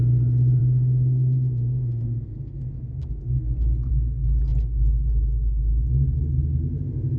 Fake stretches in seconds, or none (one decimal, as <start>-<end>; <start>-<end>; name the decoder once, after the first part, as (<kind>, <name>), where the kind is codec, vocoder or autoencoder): 0.6-3.9 (codec, SNAC)